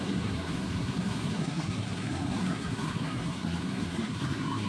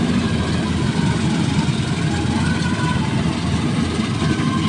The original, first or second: second